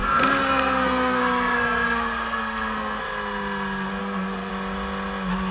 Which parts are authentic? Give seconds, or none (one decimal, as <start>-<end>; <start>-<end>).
3.0-4.0; 4.5-5.5